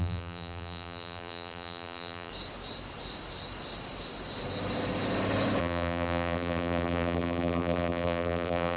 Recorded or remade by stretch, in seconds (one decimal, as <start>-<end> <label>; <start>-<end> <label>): 0.0-2.3 remade; 2.3-5.6 recorded; 5.6-8.8 remade